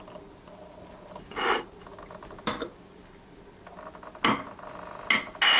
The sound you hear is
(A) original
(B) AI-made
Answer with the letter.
A